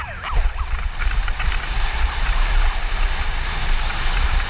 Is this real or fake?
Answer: real